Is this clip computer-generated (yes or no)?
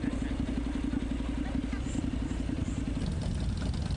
no